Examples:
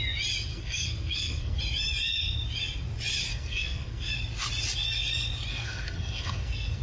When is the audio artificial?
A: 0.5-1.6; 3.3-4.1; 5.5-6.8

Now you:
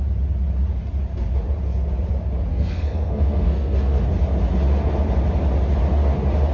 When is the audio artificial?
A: 2.5-4.0